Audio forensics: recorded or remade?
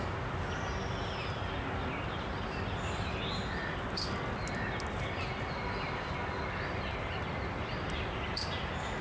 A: recorded